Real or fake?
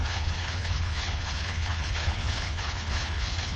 fake